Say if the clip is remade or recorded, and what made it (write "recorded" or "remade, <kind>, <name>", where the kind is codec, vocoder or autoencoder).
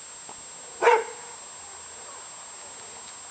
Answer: recorded